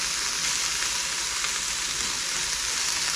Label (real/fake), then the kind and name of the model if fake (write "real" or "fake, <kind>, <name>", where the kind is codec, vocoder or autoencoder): real